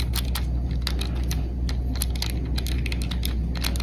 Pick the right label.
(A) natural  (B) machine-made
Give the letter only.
A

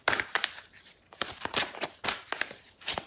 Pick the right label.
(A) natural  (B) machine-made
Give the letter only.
B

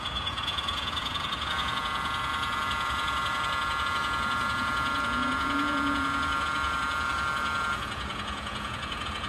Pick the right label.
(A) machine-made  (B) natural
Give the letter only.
A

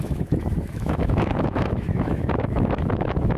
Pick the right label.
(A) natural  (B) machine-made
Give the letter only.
B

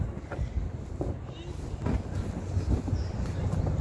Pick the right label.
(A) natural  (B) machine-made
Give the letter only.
A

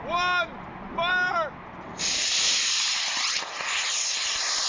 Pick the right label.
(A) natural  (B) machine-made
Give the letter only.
A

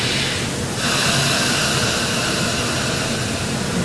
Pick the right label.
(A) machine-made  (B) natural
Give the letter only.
B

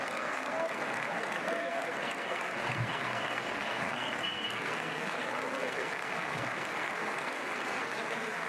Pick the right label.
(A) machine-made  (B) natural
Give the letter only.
A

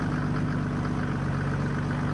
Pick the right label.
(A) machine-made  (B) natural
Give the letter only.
B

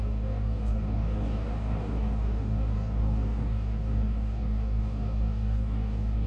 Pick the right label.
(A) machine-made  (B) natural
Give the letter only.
A